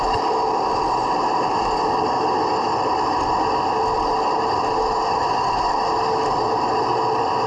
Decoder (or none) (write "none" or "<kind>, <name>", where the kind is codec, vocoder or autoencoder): none